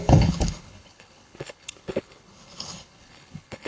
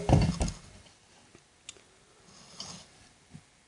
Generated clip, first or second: first